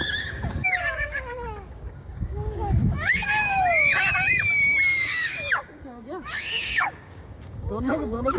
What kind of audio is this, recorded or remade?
remade